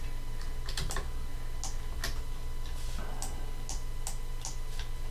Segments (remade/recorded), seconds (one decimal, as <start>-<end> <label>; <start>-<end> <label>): 0.0-5.1 recorded